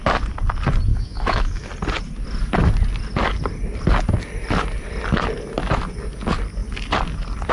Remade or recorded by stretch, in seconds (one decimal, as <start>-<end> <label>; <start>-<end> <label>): 0.0-0.9 recorded; 0.9-1.7 remade; 1.7-7.5 recorded